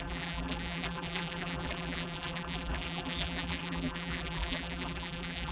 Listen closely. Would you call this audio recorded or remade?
remade